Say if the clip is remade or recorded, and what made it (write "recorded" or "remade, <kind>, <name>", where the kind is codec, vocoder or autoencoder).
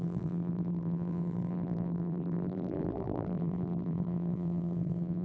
remade, vocoder, BigVGAN v2